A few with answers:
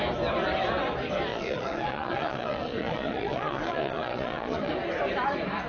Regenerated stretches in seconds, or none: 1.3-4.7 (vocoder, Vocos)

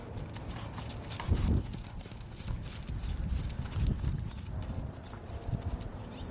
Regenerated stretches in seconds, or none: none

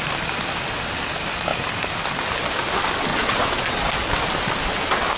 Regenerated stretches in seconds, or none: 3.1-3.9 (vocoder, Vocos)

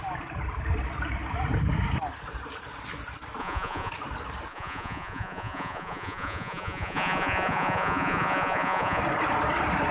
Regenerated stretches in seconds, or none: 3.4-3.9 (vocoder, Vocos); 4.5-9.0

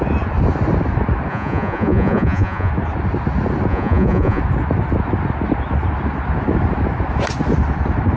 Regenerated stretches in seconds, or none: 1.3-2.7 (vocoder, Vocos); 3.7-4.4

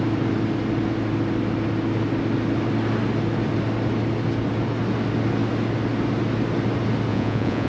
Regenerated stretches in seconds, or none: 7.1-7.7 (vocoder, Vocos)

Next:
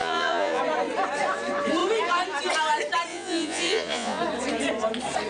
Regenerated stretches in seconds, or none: 0.0-0.6 (vocoder, Vocos); 3.1-4.2

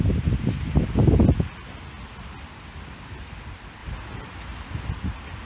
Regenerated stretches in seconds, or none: none